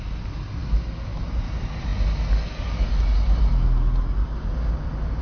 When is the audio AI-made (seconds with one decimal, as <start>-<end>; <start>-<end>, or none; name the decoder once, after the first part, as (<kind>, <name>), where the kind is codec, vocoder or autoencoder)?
none